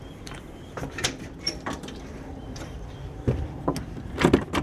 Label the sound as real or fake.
real